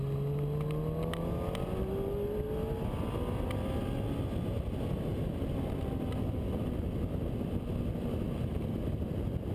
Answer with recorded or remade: recorded